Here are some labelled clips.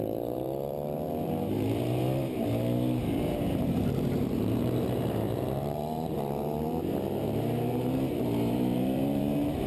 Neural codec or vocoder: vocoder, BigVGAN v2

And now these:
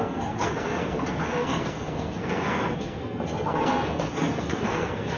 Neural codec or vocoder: codec, SNAC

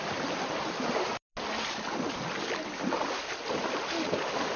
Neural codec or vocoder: none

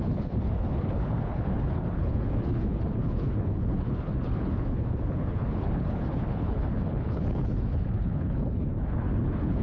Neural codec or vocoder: codec, HILCodec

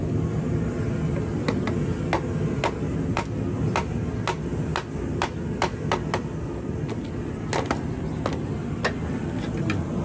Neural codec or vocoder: none